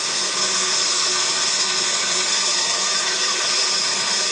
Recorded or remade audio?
remade